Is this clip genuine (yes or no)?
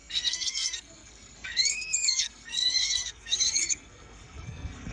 no